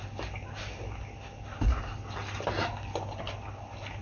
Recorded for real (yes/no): yes